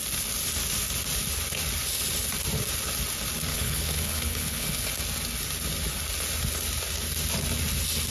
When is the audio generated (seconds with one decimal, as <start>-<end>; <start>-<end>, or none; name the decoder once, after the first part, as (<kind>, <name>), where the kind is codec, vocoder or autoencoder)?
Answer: 3.5-4.9 (codec, HILCodec)

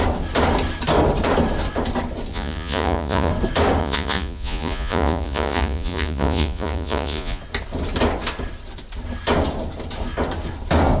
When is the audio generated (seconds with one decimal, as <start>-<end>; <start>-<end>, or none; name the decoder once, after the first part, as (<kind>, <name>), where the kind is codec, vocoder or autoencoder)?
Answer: 2.3-3.3 (vocoder, Vocos); 3.8-7.4

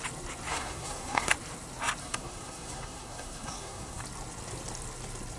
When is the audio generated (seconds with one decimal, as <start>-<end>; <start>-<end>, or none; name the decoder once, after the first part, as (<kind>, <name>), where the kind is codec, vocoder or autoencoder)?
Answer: 0.5-1.3 (codec, SNAC); 2.0-4.0

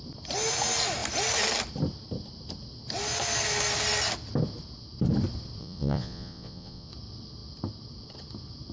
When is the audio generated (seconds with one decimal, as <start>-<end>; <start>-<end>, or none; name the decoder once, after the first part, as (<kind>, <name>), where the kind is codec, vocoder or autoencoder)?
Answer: 5.6-6.9 (vocoder, Vocos)